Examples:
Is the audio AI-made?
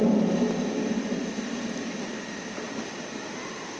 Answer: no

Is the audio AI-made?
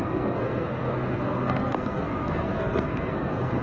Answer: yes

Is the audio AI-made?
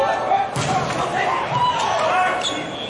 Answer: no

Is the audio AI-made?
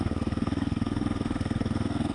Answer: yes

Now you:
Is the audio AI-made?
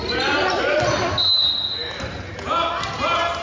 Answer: no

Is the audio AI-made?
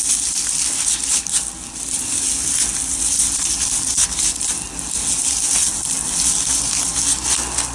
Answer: no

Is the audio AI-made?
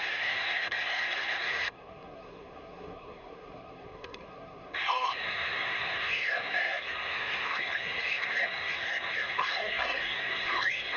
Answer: yes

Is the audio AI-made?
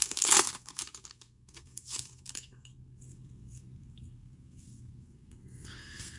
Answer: yes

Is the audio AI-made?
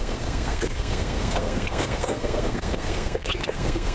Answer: yes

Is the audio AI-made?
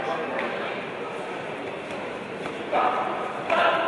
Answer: no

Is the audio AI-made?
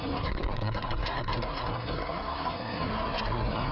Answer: yes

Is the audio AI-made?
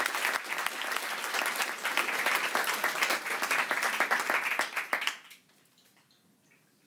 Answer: no